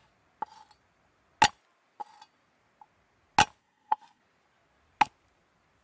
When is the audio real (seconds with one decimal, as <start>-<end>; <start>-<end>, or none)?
0.0-3.6; 4.2-5.8